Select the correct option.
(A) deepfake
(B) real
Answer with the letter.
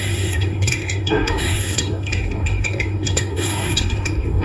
A